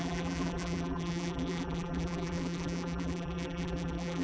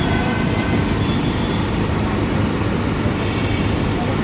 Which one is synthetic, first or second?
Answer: first